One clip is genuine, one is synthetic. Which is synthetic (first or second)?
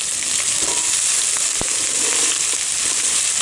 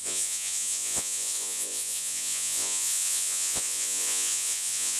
second